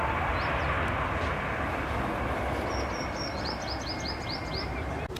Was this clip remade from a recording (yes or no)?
no